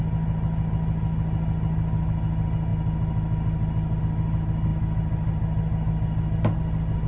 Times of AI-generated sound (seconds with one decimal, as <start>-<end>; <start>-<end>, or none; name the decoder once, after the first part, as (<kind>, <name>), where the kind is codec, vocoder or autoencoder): none